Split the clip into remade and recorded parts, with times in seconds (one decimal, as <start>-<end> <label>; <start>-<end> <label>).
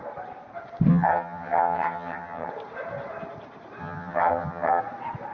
0.0-0.9 recorded; 0.9-2.5 remade; 2.5-3.8 recorded; 3.8-4.8 remade; 4.8-5.3 recorded